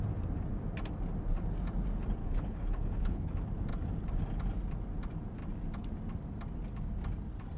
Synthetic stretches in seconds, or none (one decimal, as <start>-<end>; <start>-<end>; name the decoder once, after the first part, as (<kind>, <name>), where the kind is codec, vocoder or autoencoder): 2.2-3.3 (codec, HILCodec)